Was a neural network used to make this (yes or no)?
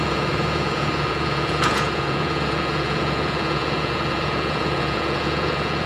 yes